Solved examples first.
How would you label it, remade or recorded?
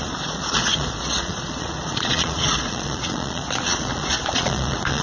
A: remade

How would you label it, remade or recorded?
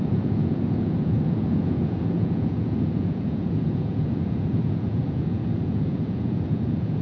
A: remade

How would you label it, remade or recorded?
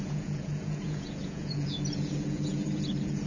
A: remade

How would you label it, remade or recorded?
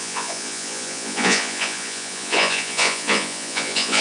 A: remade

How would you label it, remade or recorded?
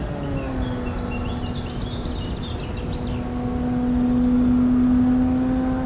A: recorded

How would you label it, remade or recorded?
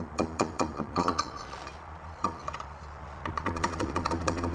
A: remade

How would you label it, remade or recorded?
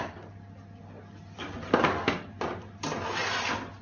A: recorded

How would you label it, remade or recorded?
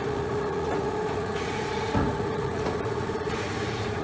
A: remade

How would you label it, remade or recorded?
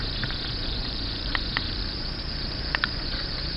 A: remade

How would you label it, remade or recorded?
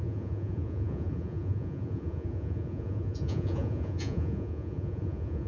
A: remade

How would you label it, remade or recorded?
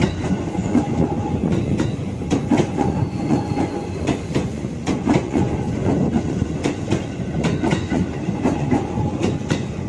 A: remade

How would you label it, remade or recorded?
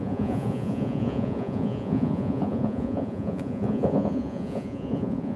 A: remade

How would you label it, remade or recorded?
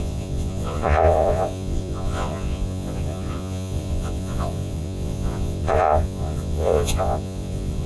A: remade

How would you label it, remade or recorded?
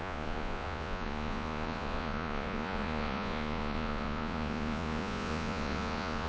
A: remade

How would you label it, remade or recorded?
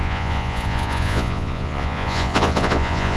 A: remade